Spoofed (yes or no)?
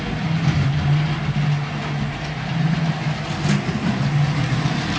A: no